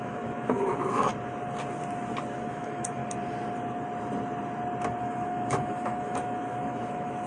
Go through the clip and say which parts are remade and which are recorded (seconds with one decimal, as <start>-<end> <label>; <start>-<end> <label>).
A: 0.0-1.1 remade; 1.1-2.5 recorded; 2.5-3.0 remade; 3.0-5.0 recorded; 5.0-7.3 remade